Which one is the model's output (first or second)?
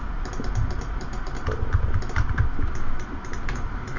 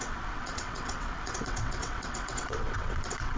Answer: second